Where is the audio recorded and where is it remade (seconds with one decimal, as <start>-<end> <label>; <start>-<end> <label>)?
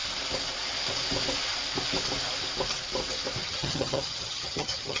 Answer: 0.0-3.4 recorded; 3.4-5.0 remade